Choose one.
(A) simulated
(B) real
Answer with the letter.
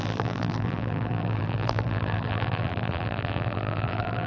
A